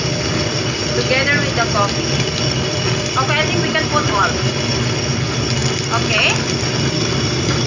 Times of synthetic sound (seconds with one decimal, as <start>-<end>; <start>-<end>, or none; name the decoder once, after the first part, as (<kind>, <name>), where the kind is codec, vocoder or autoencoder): none